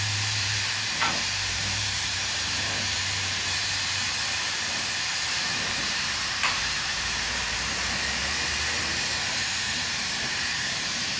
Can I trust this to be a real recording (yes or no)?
no